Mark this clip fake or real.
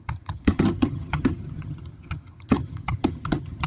fake